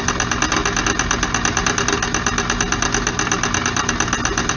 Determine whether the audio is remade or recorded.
recorded